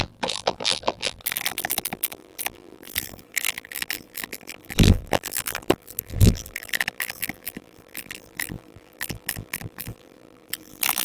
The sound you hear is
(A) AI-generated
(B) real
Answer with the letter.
A